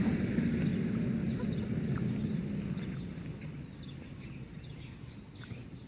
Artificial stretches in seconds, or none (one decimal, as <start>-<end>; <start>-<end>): none

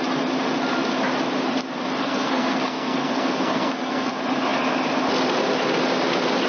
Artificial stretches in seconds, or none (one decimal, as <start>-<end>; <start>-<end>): 2.0-4.1